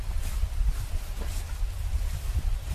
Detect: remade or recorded recorded